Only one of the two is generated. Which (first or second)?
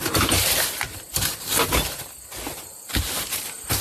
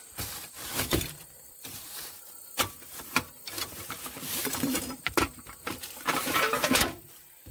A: second